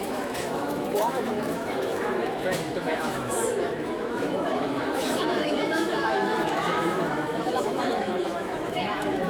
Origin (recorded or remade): remade